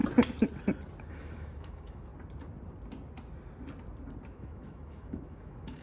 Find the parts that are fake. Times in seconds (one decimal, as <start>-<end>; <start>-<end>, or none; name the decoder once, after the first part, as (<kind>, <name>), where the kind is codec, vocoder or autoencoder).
1.1-2.1 (autoencoder, DAC-VAE); 4.3-5.8

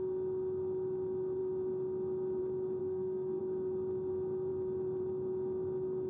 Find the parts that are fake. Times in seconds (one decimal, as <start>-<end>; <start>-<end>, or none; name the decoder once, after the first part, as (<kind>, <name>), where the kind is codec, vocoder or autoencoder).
2.8-3.4 (codec, SNAC)

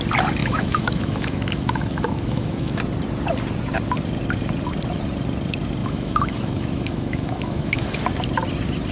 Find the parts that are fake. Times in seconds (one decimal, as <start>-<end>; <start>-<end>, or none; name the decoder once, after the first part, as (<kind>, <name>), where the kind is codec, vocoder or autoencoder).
0.4-2.8 (autoencoder, DAC-VAE); 5.8-8.0

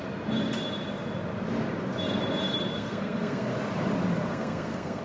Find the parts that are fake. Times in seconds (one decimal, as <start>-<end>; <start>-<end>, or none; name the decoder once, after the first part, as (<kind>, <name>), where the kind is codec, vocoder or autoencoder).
2.7-3.5 (codec, SNAC); 4.3-5.0